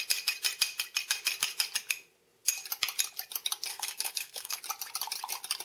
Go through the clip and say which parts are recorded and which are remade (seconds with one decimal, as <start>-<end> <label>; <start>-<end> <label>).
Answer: 0.0-3.7 recorded; 3.7-4.6 remade; 4.6-5.6 recorded